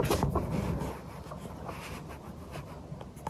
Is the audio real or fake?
real